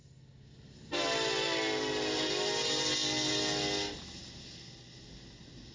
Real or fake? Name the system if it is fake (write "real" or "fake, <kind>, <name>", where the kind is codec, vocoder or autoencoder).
real